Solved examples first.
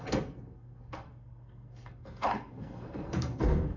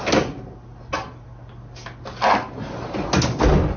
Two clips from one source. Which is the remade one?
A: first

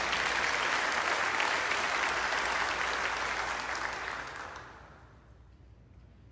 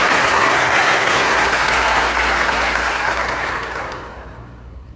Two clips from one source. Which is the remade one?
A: second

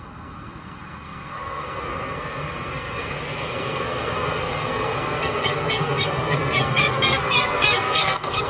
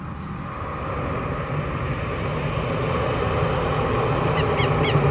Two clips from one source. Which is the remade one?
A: first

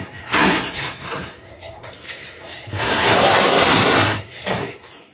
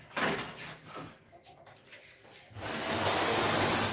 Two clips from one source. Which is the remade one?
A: first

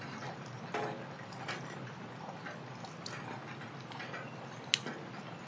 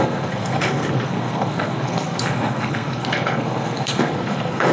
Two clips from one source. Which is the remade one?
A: second